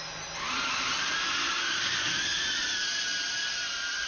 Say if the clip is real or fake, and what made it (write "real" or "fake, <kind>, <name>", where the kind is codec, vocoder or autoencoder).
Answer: real